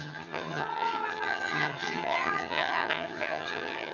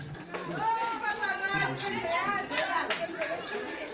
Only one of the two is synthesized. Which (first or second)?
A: first